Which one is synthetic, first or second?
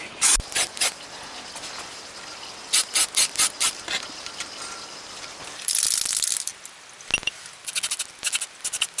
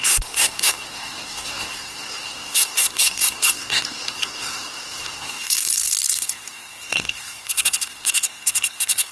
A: second